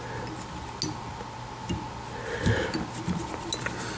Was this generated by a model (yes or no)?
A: no